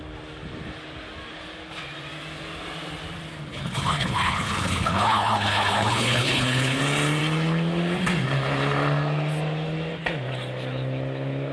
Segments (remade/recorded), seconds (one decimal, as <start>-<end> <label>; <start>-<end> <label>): 0.0-3.5 recorded; 3.5-6.8 remade; 6.8-11.5 recorded